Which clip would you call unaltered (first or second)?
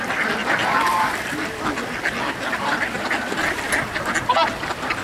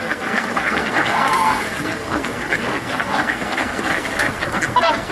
first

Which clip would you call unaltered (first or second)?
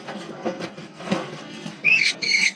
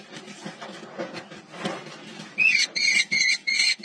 second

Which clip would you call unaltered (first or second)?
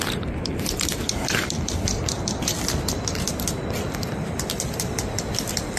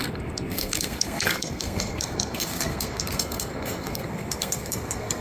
first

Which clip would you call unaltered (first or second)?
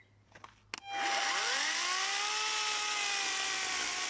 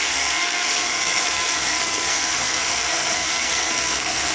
first